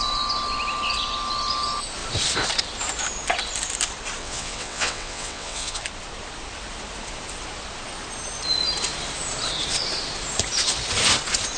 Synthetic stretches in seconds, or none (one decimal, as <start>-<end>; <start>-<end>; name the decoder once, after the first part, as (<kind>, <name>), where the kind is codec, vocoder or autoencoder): 4.2-5.8 (vocoder, WaveNeXt)